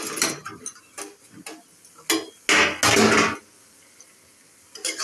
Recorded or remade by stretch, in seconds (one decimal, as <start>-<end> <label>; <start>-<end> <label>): 0.0-0.4 remade; 0.4-3.4 recorded; 3.4-5.0 remade